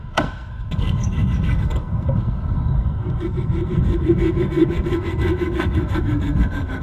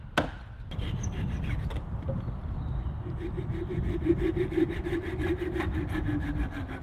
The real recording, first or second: second